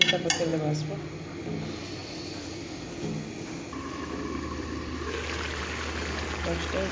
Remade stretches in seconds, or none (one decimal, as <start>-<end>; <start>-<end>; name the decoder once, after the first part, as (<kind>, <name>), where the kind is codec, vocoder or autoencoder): none